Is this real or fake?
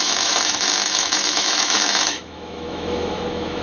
fake